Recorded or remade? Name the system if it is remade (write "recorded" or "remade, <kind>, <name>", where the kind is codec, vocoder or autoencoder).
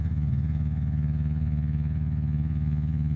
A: remade, vocoder, Vocos